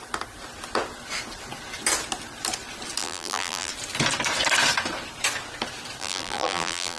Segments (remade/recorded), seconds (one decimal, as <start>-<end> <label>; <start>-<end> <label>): 0.0-3.0 recorded; 3.0-3.7 remade; 3.7-6.0 recorded; 6.0-7.0 remade